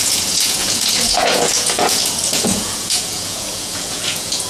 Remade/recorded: remade